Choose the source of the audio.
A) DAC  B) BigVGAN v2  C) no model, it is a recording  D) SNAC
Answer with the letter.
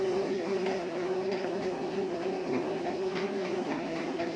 D